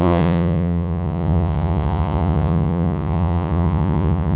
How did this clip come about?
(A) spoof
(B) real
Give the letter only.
A